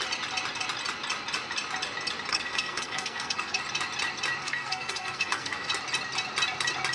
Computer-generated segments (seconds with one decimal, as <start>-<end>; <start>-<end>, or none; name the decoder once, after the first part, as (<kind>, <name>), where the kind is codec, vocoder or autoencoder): 2.3-3.6 (codec, SNAC); 4.4-5.7